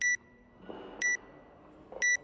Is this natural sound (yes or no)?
yes